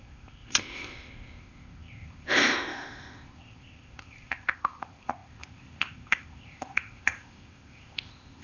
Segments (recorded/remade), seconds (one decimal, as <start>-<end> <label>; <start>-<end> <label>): 0.0-8.4 remade